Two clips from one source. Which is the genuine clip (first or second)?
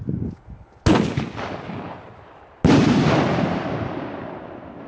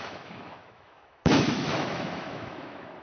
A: first